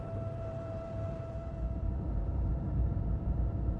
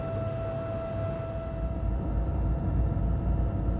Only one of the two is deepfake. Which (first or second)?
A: first